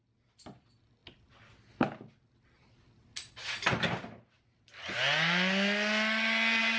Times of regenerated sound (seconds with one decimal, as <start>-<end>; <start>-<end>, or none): none